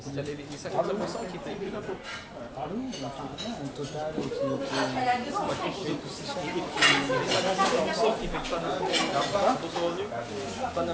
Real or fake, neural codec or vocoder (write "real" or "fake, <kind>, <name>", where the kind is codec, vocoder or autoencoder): real